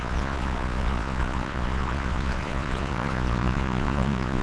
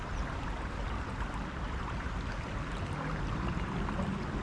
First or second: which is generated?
first